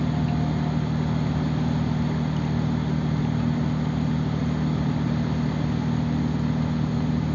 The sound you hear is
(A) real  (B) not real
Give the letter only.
A